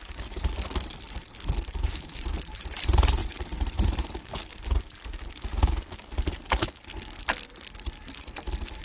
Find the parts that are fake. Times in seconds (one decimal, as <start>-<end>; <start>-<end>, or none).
none